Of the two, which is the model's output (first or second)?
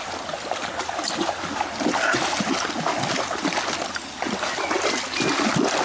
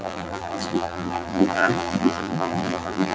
second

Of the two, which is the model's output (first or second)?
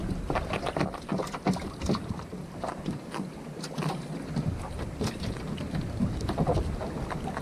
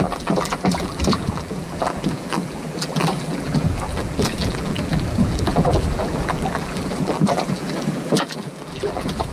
second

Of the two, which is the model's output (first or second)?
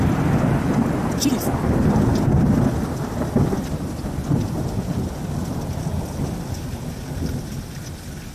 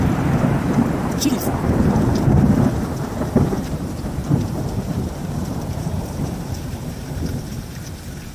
second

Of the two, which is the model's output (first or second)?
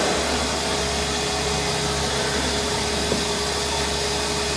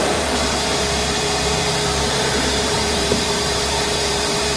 second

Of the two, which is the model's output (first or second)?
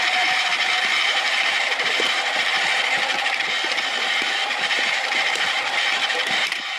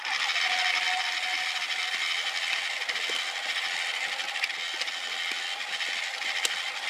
first